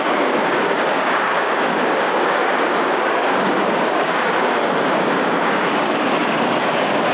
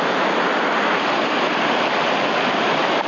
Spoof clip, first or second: first